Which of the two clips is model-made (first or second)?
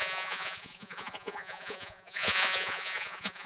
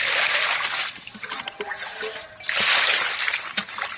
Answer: first